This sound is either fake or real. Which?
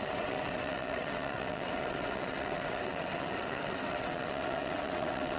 fake